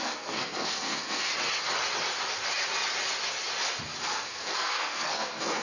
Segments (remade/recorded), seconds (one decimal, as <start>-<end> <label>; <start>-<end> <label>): 0.0-1.3 remade; 1.3-4.0 recorded; 4.0-5.6 remade